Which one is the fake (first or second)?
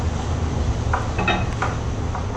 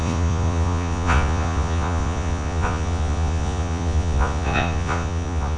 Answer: second